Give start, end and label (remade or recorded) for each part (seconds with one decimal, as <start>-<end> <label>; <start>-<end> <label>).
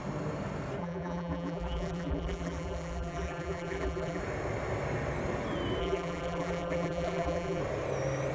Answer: 0.0-0.8 recorded; 0.8-4.2 remade; 4.2-5.8 recorded; 5.8-7.6 remade; 7.6-8.3 recorded